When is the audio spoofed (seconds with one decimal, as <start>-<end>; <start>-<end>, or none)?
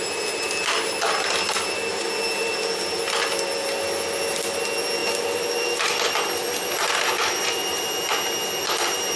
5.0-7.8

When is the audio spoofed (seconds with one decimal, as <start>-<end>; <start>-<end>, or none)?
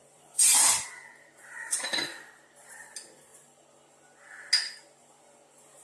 0.0-2.5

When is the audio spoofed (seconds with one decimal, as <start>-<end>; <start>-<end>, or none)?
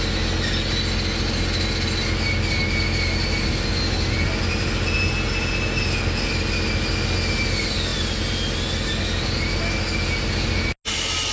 none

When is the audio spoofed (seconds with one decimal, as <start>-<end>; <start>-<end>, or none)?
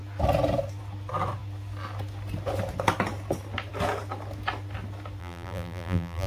5.2-6.3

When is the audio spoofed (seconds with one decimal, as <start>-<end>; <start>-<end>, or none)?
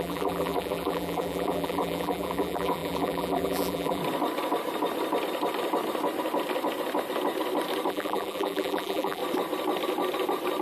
0.0-4.0; 7.9-9.2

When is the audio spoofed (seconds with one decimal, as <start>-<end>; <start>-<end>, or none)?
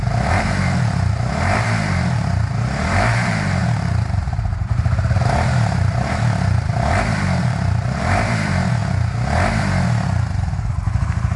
0.0-8.8; 10.7-11.4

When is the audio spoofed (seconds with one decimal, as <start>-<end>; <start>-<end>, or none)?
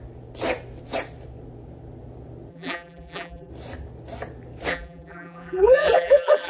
2.5-3.5; 4.7-6.5